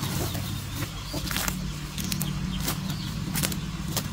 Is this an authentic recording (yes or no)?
yes